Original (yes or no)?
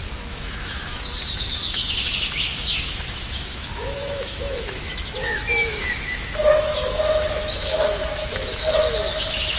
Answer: no